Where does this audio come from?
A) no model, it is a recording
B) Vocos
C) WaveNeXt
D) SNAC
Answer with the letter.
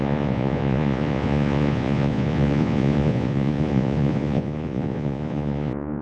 B